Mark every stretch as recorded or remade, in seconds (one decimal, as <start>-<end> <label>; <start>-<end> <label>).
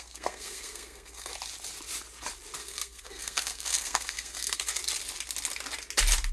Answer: 0.0-1.3 remade; 1.3-2.6 recorded; 2.6-4.8 remade; 4.8-6.3 recorded